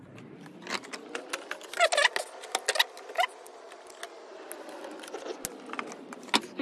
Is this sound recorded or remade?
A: recorded